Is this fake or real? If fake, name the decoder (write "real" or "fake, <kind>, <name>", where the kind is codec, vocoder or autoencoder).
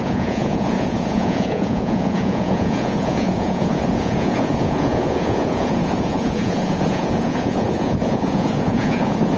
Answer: fake, vocoder, Vocos